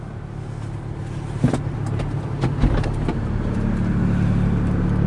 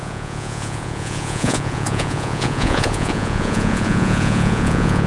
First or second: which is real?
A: first